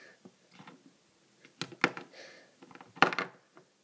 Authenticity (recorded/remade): recorded